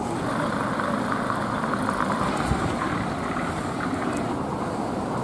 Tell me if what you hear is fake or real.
real